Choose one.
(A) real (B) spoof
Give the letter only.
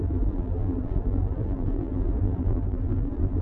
B